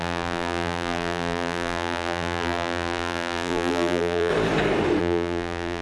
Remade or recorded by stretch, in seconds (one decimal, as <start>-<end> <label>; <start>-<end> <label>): 0.0-4.3 remade; 4.3-5.0 recorded; 5.0-5.8 remade